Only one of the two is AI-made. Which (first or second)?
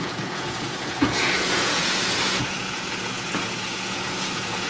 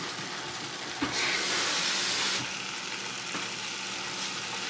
first